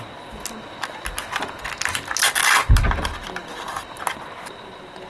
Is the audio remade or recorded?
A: recorded